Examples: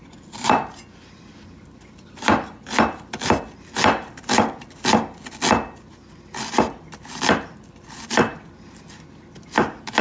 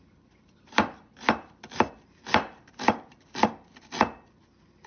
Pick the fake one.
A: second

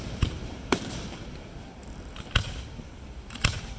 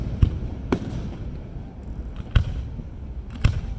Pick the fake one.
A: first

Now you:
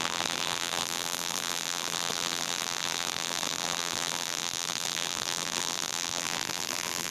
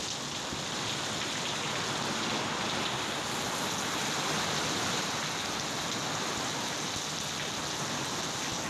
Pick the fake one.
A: first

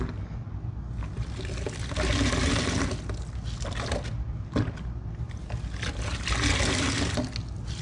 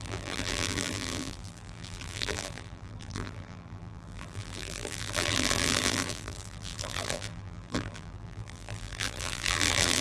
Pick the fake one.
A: second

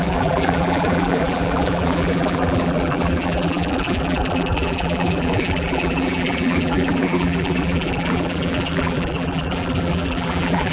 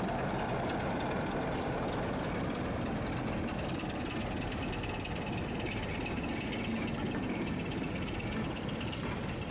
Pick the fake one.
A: first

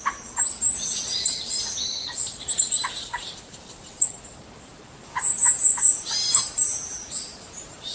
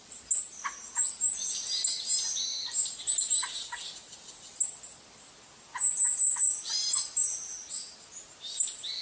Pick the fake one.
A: first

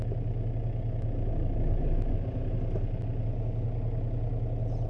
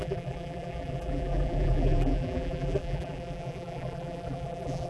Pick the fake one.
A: second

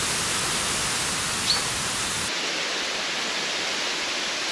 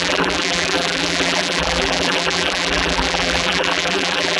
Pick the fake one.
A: second